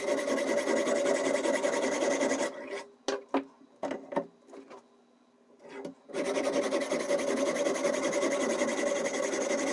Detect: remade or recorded recorded